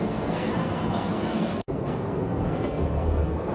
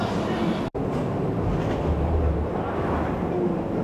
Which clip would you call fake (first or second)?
first